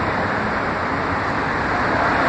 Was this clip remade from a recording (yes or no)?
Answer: no